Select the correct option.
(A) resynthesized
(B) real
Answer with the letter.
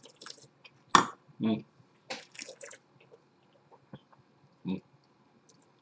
B